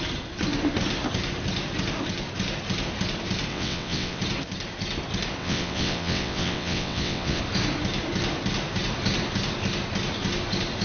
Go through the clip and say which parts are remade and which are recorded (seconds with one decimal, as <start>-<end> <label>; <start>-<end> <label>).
0.0-3.5 recorded; 3.5-4.2 remade; 4.2-5.4 recorded; 5.4-7.4 remade; 7.4-10.8 recorded